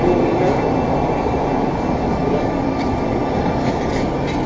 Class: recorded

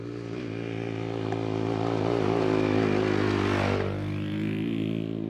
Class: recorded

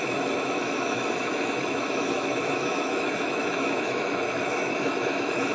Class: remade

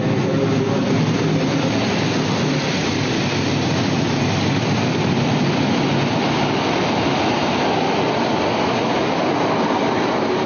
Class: recorded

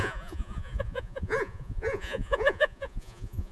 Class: remade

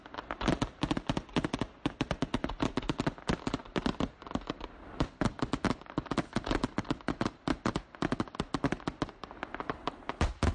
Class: recorded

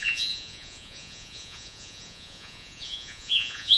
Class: remade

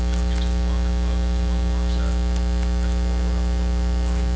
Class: recorded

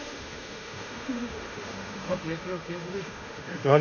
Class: remade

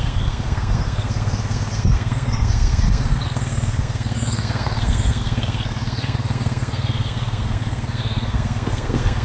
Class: remade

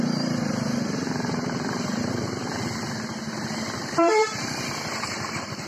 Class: remade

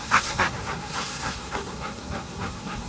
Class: remade